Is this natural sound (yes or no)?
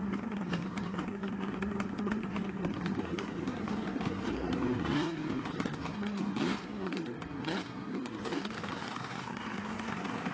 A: no